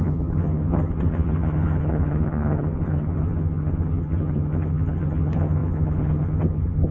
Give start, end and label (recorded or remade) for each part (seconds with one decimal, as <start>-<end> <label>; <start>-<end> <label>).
0.0-6.9 remade